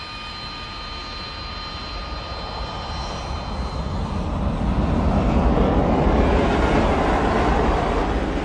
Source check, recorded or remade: recorded